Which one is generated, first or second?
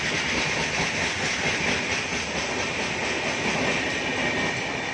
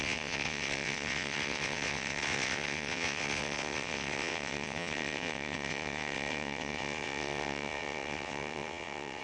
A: second